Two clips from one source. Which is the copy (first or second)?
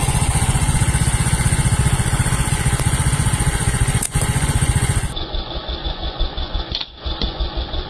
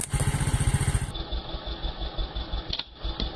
first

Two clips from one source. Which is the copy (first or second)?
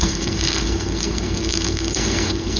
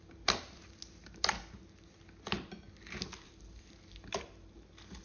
first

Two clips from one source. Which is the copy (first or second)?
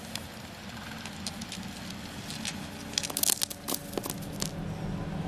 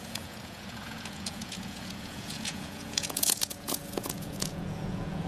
second